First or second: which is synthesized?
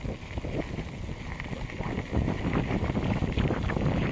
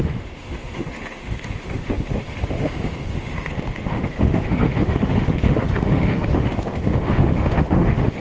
second